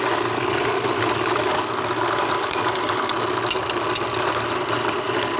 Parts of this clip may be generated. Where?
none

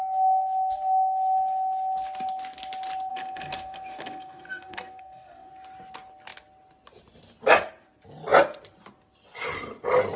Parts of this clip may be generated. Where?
3.1-5.5 (codec, SNAC)

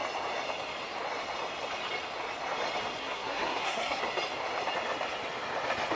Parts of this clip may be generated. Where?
3.0-4.0 (codec, SNAC)

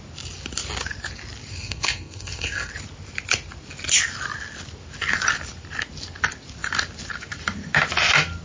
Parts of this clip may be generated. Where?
1.5-2.7 (codec, SNAC)